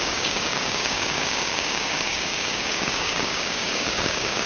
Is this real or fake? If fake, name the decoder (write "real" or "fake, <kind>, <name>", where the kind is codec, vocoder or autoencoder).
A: fake, codec, DAC